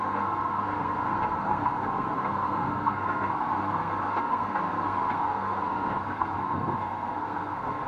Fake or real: fake